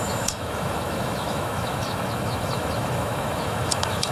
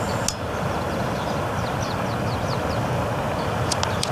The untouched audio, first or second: second